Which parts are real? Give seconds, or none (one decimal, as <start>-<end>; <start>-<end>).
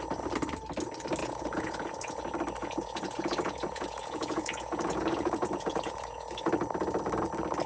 0.0-1.2; 2.2-2.6; 6.5-7.7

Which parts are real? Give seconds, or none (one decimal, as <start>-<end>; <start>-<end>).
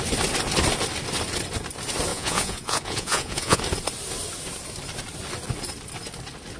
0.0-2.1; 3.6-6.6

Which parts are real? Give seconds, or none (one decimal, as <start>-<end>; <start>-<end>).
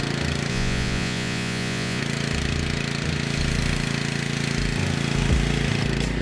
0.0-0.5; 2.0-6.2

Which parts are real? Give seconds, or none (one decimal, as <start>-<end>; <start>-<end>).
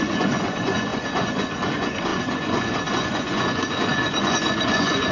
none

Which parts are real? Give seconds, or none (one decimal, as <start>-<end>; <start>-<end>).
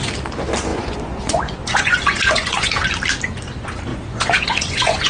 0.0-0.7; 2.9-3.9